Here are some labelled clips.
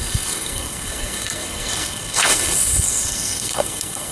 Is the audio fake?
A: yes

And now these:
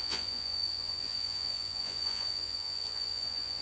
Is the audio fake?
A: yes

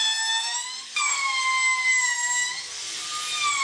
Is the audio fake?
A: no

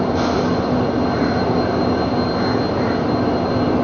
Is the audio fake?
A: no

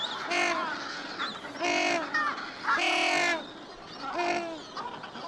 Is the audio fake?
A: no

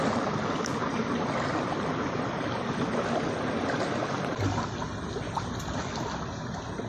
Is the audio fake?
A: no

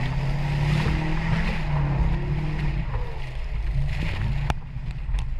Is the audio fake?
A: no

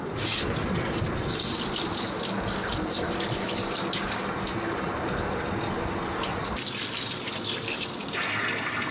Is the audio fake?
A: no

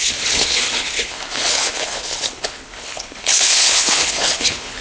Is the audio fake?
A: yes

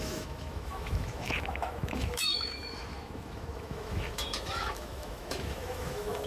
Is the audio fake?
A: yes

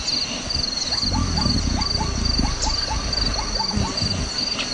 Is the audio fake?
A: no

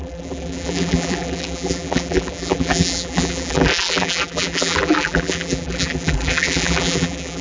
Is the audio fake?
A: yes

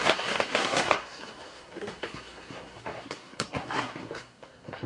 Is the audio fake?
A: yes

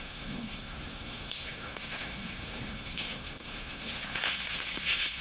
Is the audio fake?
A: yes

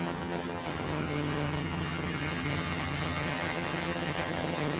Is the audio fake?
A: yes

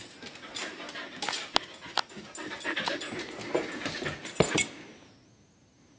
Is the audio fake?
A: no